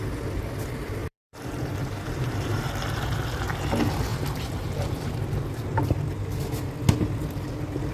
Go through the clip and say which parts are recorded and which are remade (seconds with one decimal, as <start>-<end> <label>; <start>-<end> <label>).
0.0-1.0 recorded; 1.0-2.6 remade; 2.6-4.1 recorded; 4.1-5.1 remade; 5.1-7.9 recorded